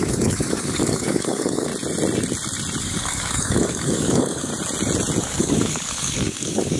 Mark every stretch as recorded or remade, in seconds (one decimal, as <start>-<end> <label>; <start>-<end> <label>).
0.0-1.7 remade; 1.7-2.8 recorded; 2.8-4.5 remade; 4.5-5.2 recorded; 5.2-6.8 remade